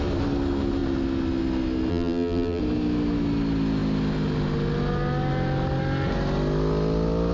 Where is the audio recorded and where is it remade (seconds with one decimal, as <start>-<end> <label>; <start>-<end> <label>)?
0.0-1.9 recorded; 1.9-2.6 remade; 2.6-7.3 recorded